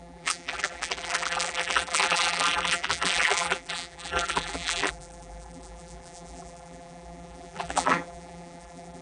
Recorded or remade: remade